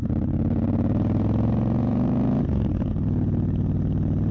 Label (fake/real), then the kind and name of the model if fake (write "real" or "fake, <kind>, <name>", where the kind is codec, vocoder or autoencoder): fake, vocoder, BigVGAN v2